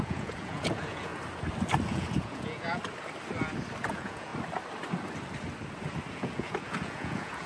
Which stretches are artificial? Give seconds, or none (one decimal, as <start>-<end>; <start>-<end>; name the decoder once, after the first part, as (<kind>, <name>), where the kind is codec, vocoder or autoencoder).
0.0-1.1 (vocoder, Vocos); 1.9-2.8; 3.9-4.3; 6.1-7.5